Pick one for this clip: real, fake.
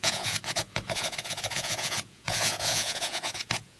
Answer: fake